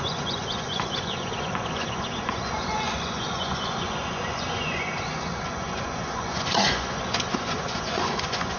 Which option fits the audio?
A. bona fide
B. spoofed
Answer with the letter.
B